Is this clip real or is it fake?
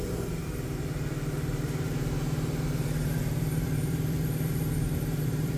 fake